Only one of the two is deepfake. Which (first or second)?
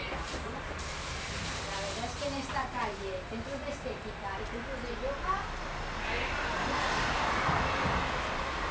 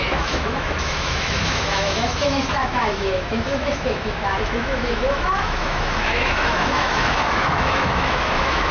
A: second